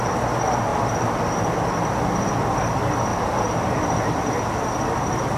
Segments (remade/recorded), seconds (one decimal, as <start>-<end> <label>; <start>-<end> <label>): 0.0-5.4 recorded

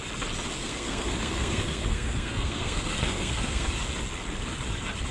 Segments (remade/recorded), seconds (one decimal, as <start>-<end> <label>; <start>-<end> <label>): 0.0-0.6 recorded; 0.6-3.7 remade; 3.7-5.1 recorded

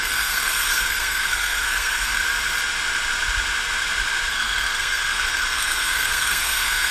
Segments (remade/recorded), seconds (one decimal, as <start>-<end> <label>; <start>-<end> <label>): 0.0-2.2 remade; 2.2-4.3 recorded; 4.3-6.9 remade